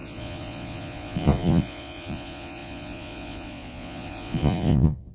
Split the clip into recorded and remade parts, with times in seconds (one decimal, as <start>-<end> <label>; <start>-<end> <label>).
0.0-5.1 remade